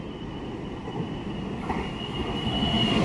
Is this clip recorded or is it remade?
recorded